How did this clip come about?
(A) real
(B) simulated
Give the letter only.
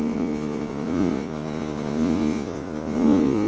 B